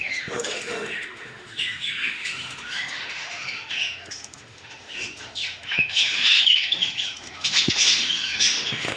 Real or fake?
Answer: fake